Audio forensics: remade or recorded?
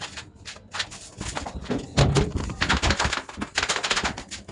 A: recorded